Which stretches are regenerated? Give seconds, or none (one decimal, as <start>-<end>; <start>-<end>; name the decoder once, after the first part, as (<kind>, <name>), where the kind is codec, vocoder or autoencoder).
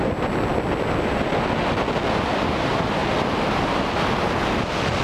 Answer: none